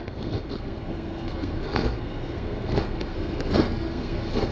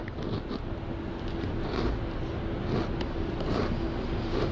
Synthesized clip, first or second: first